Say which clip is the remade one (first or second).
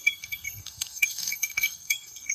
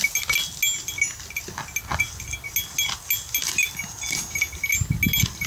first